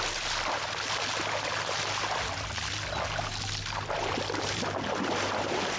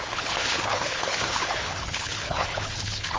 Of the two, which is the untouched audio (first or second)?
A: first